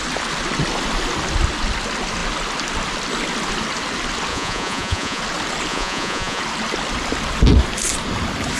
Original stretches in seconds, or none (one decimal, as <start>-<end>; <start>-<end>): 0.0-4.3; 5.2-5.7; 6.4-8.6